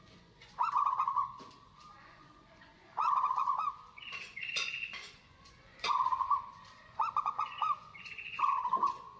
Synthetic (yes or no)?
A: yes